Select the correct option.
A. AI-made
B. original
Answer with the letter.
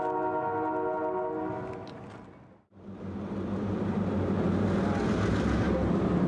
B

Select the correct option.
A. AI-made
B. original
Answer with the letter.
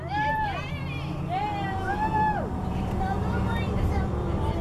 B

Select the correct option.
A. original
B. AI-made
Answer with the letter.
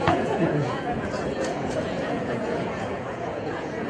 B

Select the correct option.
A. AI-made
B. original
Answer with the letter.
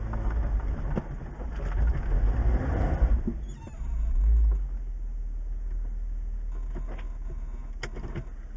B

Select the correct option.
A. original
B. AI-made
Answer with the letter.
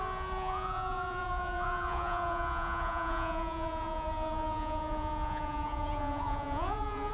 B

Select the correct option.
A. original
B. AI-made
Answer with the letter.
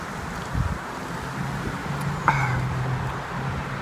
A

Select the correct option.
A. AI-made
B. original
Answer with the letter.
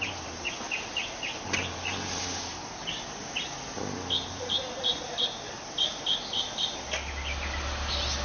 B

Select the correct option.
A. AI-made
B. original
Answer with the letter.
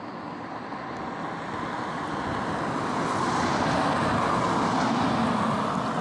B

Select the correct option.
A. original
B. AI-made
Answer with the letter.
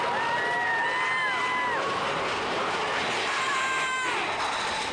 A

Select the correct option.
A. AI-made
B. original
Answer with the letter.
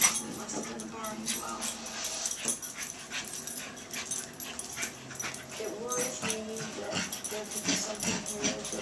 B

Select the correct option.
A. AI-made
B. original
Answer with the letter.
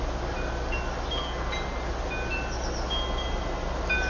B